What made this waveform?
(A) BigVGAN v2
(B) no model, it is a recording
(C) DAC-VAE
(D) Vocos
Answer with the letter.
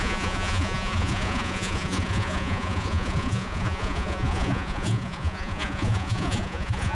D